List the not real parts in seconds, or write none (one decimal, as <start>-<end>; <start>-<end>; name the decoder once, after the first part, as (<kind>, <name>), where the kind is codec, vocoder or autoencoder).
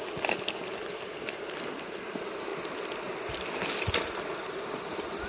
none